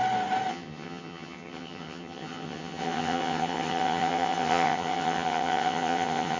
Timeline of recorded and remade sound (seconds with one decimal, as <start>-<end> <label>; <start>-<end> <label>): 0.0-0.5 recorded; 0.5-6.4 remade